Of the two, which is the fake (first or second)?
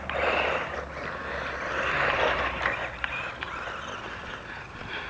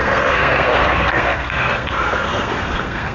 second